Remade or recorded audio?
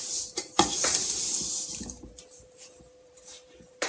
remade